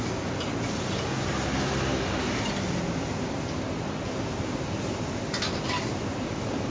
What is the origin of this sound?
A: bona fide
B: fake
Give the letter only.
A